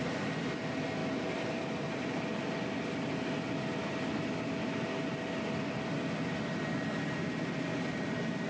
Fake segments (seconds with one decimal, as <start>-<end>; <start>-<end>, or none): 1.0-2.1